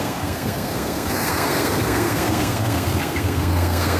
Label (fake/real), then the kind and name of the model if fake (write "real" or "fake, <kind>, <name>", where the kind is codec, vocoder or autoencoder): fake, codec, SNAC